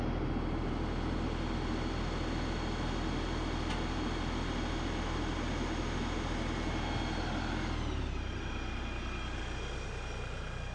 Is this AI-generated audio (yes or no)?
no